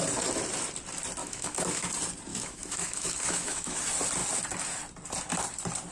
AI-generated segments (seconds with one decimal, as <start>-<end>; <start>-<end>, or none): 1.2-1.9; 2.3-3.8